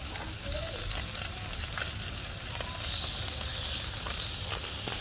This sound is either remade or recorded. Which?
recorded